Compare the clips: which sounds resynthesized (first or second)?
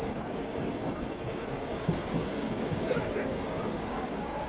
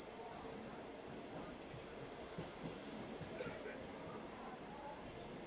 first